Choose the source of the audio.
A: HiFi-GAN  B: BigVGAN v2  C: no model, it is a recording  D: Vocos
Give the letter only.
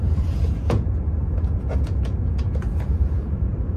D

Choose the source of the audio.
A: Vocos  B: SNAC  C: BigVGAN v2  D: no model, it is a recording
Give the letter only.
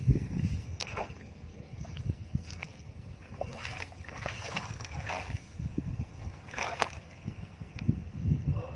B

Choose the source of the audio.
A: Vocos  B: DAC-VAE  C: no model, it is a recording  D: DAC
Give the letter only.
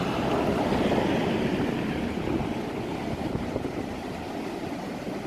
C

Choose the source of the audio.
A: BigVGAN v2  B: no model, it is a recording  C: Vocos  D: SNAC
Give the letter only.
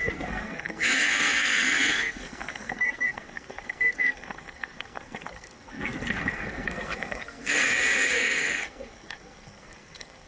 D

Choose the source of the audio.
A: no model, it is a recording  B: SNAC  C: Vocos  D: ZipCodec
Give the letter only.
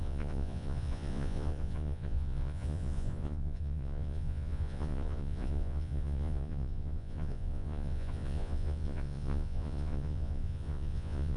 C